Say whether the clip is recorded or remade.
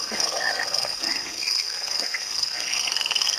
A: remade